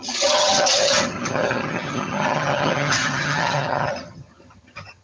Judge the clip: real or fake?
fake